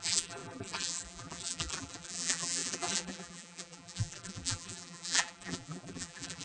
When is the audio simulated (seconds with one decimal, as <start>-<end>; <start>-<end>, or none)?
0.0-6.4

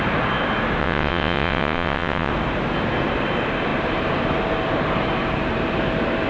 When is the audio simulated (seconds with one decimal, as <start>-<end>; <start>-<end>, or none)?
0.8-2.3

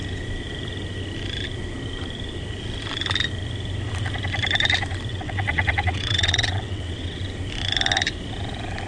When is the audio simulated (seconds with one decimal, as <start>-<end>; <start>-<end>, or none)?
5.1-7.2

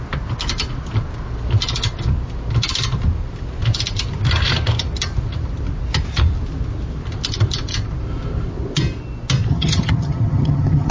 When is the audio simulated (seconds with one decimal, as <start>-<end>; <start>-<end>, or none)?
9.5-10.9

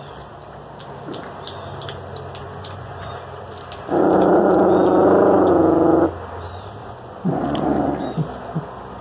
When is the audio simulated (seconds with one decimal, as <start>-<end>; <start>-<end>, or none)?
2.4-3.1; 4.0-5.5; 6.8-8.0

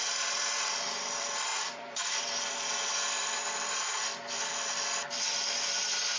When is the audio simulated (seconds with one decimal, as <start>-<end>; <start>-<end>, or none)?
0.0-6.2

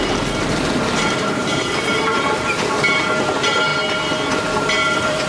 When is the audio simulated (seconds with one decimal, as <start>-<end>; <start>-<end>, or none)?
0.0-3.7; 4.3-5.3

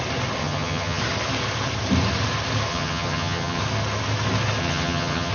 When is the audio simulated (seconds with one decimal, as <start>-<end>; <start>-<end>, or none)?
0.4-1.0; 2.7-3.6; 4.6-5.3